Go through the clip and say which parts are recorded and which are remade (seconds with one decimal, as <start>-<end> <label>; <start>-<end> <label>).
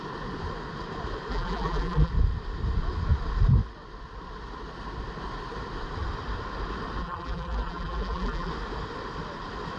0.0-1.3 recorded; 1.3-2.1 remade; 2.1-7.0 recorded; 7.0-8.5 remade; 8.5-9.8 recorded